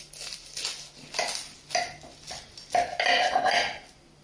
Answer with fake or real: real